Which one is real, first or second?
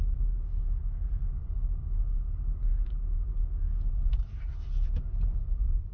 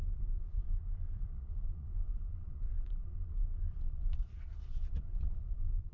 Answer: first